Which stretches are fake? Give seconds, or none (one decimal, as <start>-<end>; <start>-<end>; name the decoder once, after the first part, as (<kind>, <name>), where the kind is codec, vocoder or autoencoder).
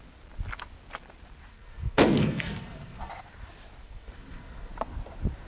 1.5-3.1 (codec, SNAC); 3.8-4.7